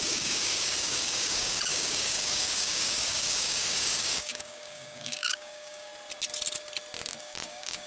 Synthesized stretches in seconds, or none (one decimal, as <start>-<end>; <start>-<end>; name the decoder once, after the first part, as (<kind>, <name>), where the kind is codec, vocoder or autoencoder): 0.0-5.9 (codec, DAC); 7.2-7.9